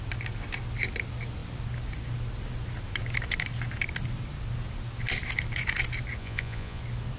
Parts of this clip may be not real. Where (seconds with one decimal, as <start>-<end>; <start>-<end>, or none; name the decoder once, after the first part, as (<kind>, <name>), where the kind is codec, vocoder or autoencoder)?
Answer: 6.2-6.8 (vocoder, Vocos)